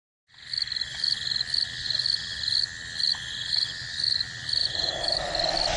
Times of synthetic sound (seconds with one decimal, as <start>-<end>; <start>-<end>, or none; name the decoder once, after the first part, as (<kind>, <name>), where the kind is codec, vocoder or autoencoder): 4.6-5.2 (vocoder, BigVGAN v2)